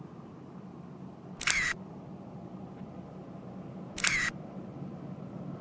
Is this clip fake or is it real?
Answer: real